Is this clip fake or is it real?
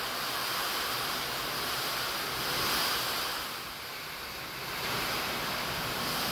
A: real